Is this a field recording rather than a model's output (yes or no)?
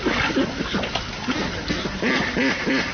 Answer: yes